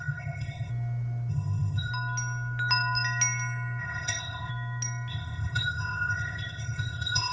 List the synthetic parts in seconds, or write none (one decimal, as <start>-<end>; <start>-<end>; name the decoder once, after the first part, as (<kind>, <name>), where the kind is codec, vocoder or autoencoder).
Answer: 0.0-0.7 (codec, ZipCodec); 1.3-1.9; 3.8-4.5; 5.1-7.3